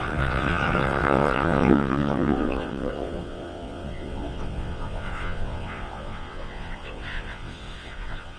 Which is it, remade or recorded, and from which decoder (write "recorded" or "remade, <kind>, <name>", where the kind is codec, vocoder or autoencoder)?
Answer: remade, vocoder, WaveNeXt